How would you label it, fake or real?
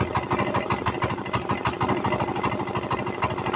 real